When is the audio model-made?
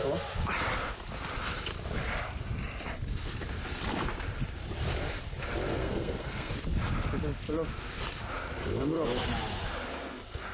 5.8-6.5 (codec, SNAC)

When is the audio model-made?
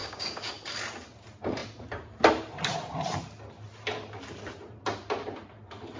0.0-0.5 (codec, DAC)